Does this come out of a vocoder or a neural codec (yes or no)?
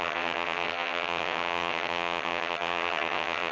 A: yes